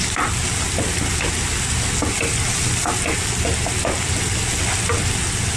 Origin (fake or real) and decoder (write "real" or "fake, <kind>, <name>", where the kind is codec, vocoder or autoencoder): real